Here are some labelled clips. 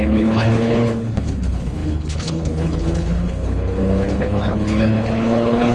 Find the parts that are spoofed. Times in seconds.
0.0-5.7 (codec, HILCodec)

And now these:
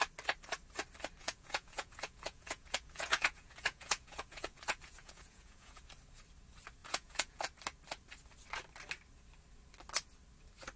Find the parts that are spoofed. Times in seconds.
1.2-5.8 (vocoder, Vocos); 6.8-7.4

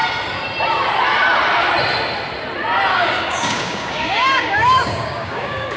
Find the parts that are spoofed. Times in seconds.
2.9-5.8 (codec, DAC)

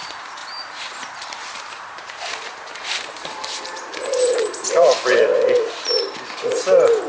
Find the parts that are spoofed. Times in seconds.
0.0-5.3 (vocoder, BigVGAN v2)

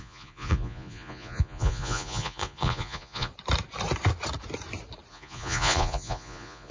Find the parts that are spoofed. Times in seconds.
0.0-3.3 (vocoder, Vocos); 5.1-6.7

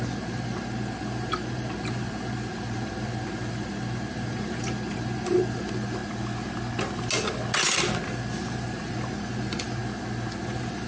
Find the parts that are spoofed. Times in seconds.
0.0-6.0 (vocoder, BigVGAN v2); 8.0-9.8; 10.4-10.9

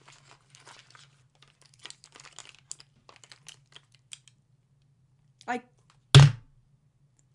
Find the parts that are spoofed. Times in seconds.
none

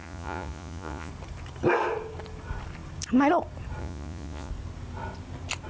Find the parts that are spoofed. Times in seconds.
0.0-1.1 (vocoder, Vocos); 3.8-4.5